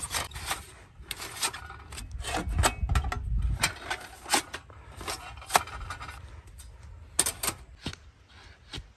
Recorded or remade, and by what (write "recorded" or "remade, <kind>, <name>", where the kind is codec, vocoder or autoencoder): recorded